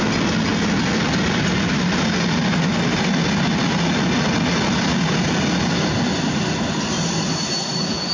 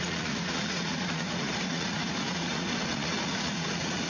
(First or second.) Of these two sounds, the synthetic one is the second